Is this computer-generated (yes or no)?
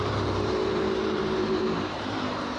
yes